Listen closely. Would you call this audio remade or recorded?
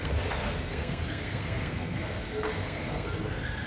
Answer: remade